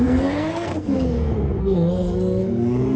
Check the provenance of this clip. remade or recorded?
remade